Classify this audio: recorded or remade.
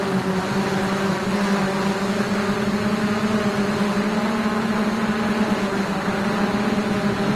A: recorded